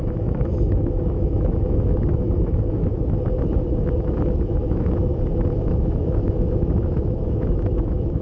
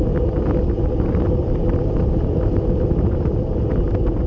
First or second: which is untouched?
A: second